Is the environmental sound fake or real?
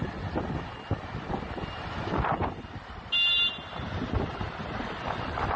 real